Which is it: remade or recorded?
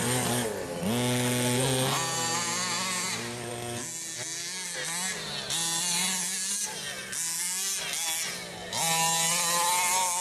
recorded